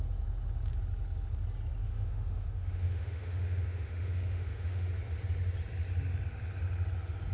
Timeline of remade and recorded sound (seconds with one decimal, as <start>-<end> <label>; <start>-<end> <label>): 0.0-1.8 recorded; 1.8-4.9 remade; 4.9-7.3 recorded